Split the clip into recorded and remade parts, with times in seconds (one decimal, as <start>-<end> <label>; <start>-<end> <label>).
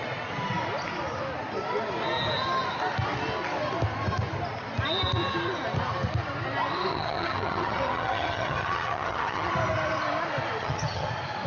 0.0-6.9 recorded; 6.9-9.5 remade; 9.5-10.6 recorded; 10.6-11.1 remade; 11.1-11.5 recorded